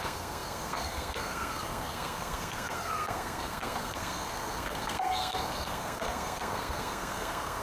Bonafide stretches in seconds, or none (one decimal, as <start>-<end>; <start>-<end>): none